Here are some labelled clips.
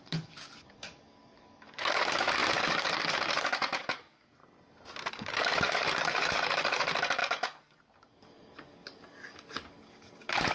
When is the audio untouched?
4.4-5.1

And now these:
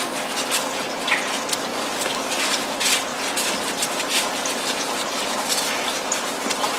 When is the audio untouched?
0.0-1.7; 2.4-6.8

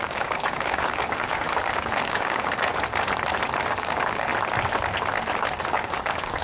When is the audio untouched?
2.7-3.6; 4.3-5.7

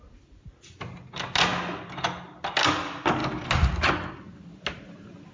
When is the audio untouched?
0.0-5.3

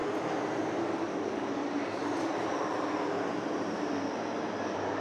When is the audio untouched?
0.0-0.8; 1.6-4.6

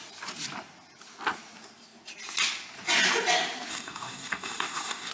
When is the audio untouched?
0.0-3.7

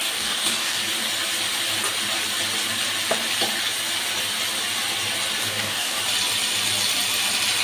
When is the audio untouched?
0.8-5.4; 6.0-7.6

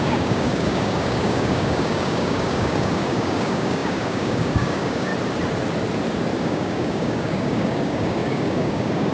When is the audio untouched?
5.1-6.4